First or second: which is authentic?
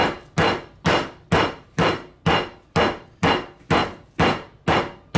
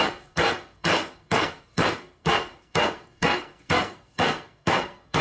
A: first